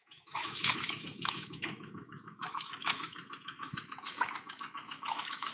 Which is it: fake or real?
fake